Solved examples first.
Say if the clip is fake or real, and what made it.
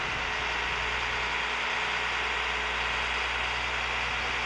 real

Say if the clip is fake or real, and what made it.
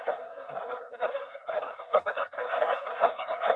fake, codec, SNAC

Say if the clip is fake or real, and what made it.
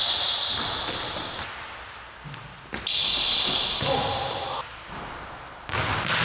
real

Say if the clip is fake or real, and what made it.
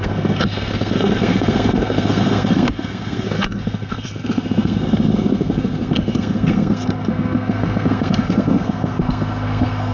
fake, codec, SNAC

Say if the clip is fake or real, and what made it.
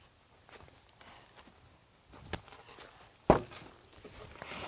real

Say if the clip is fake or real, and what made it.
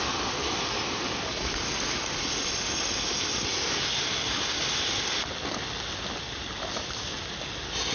real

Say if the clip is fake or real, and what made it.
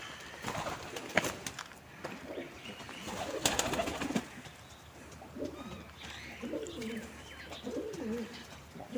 real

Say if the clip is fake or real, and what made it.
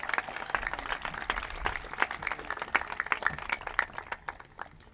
real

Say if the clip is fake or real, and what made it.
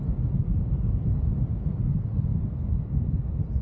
real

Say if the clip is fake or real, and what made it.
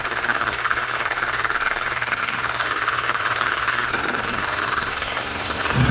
fake, codec, SNAC